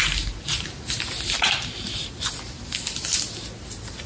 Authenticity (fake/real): real